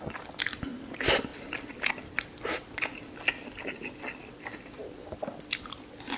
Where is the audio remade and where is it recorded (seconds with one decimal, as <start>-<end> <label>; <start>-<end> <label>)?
0.0-6.2 recorded